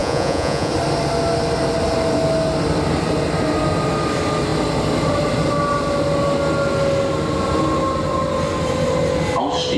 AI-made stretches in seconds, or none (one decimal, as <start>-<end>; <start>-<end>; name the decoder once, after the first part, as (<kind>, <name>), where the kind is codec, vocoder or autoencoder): 0.0-0.7 (vocoder, Vocos)